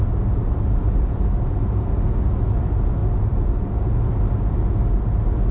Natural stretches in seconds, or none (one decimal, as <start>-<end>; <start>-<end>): 0.0-5.5